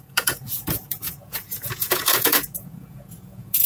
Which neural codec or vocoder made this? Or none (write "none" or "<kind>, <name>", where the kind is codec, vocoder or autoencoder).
vocoder, Vocos